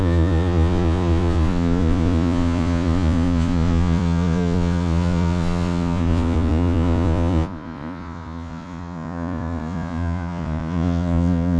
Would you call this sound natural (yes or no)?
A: no